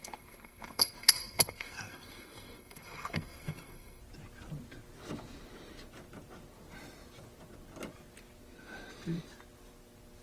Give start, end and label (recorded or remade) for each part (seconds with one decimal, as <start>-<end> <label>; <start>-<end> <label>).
0.0-4.0 remade; 4.0-10.2 recorded